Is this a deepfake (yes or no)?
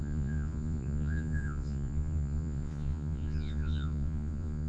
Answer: yes